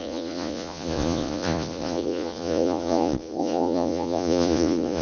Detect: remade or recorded remade